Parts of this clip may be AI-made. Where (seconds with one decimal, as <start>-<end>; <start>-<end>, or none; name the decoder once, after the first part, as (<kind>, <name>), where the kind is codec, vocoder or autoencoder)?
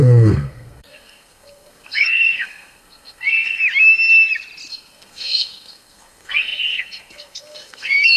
0.0-3.6 (codec, SNAC); 4.7-8.2